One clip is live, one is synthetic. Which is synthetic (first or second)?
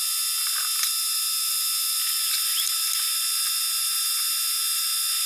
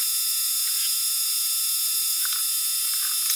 second